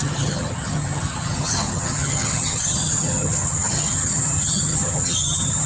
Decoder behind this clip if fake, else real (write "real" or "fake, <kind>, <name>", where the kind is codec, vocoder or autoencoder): fake, vocoder, HiFi-GAN